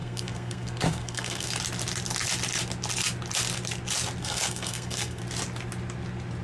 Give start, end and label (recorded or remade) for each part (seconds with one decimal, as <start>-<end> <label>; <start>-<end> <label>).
0.0-1.5 remade; 1.5-4.2 recorded; 4.2-5.2 remade; 5.2-6.4 recorded